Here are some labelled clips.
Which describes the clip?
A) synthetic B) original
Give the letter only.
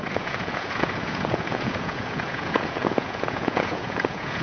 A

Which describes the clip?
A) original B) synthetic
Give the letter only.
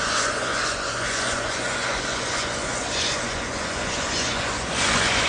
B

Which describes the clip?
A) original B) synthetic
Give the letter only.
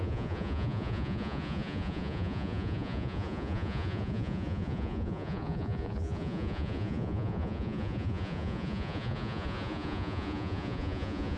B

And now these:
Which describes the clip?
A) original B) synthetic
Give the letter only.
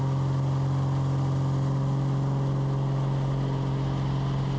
A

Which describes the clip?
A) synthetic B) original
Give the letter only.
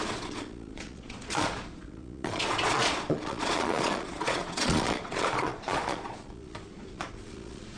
A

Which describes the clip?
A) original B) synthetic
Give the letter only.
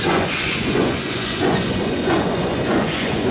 B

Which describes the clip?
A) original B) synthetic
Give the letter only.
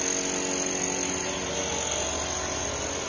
A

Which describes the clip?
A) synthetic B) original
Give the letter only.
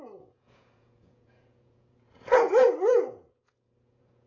A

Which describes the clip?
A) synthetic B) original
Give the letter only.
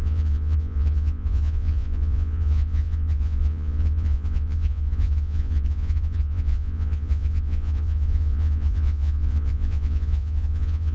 A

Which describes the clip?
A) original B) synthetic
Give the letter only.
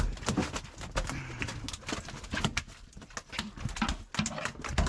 A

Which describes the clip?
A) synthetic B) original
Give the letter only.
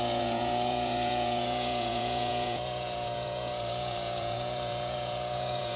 A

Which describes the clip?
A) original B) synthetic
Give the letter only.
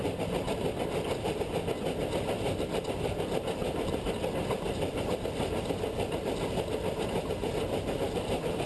A